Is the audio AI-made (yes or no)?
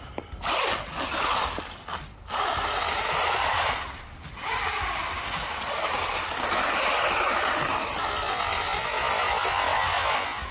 no